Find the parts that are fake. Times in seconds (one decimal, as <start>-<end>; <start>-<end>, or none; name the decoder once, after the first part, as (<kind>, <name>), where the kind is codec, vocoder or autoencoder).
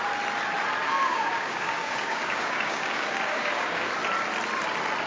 0.8-3.9 (codec, DAC)